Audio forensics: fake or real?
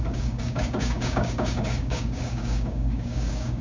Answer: fake